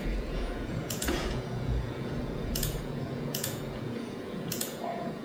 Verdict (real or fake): fake